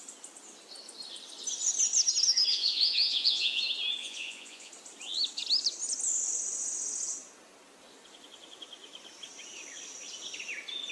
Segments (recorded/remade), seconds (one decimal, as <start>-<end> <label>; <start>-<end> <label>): 0.0-2.5 recorded; 2.5-3.6 remade; 3.6-4.0 recorded; 4.0-4.7 remade; 4.7-10.9 recorded